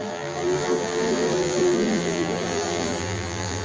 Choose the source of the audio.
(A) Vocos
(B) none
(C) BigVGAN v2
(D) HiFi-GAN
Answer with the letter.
C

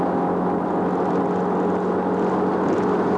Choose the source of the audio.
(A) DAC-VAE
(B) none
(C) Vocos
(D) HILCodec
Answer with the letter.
B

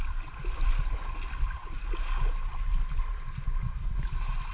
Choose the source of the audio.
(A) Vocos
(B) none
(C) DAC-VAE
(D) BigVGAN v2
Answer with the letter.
B